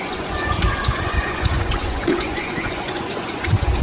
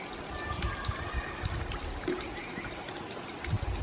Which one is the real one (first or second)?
second